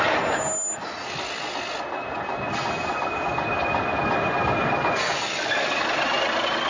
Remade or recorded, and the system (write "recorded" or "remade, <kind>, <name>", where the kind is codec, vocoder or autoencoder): recorded